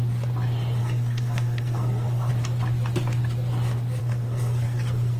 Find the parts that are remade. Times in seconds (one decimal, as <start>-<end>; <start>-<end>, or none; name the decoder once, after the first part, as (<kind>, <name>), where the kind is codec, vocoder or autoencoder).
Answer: 0.8-2.3 (codec, SNAC); 4.0-5.2